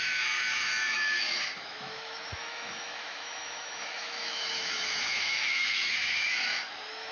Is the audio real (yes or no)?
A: no